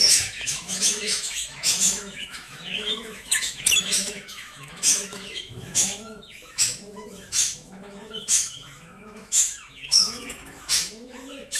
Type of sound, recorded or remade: remade